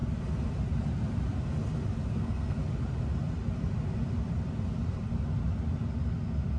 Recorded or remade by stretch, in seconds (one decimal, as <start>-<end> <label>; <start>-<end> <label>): 0.0-2.1 recorded; 2.1-2.6 remade; 2.6-6.6 recorded